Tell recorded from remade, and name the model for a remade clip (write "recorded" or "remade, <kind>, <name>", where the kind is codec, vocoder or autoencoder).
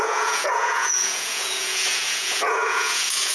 remade, vocoder, Vocos